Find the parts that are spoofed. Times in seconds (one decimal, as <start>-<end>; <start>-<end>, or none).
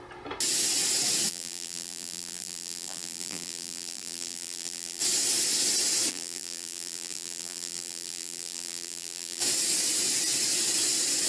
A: 1.3-5.0; 6.1-9.4